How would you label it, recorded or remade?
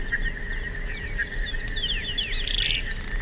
recorded